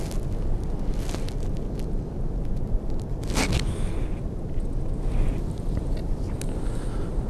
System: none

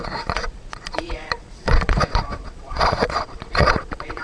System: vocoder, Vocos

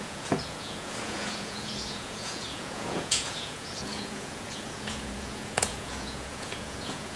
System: vocoder, Vocos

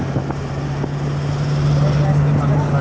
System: none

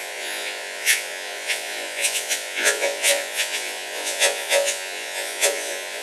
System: vocoder, Vocos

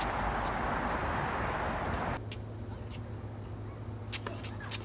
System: none